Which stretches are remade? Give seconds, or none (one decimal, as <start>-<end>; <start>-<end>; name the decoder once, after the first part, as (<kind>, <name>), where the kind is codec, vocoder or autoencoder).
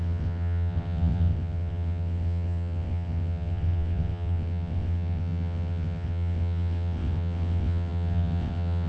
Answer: 0.0-8.9 (vocoder, WaveNeXt)